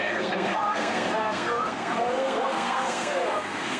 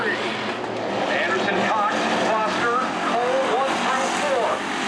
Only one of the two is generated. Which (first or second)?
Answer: first